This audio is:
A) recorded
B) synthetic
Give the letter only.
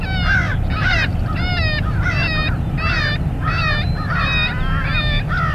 A